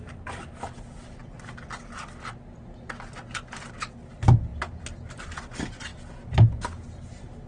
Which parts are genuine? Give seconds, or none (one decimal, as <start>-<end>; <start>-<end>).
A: 0.0-7.5